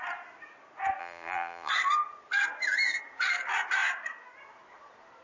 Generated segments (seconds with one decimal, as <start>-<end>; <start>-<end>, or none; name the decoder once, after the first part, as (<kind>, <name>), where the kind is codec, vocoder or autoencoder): 1.0-1.7 (vocoder, BigVGAN v2)